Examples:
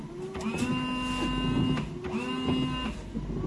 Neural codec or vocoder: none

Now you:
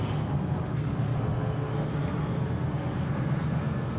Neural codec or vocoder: codec, SNAC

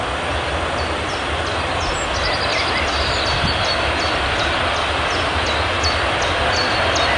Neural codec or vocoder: none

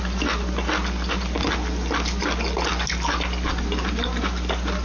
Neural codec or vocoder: none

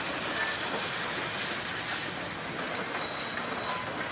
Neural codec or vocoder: none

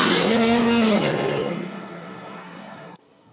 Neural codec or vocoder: codec, SNAC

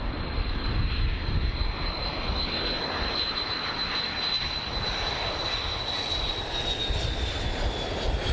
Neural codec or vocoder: none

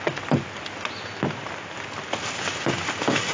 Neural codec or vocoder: none